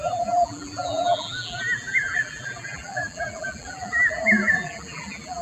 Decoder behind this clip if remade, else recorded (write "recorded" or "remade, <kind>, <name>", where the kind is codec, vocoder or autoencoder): remade, vocoder, BigVGAN v2